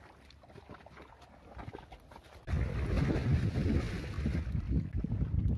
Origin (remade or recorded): recorded